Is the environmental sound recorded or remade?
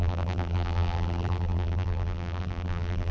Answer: remade